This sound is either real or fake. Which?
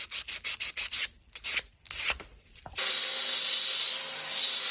fake